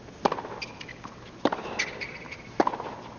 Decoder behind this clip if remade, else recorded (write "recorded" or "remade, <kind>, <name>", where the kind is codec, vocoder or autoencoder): recorded